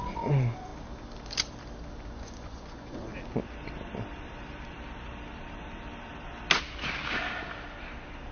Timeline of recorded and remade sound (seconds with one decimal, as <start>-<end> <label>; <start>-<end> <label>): 0.0-0.7 remade; 0.7-2.2 recorded; 2.2-3.1 remade; 3.1-8.3 recorded